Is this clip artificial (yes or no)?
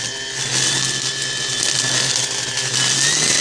no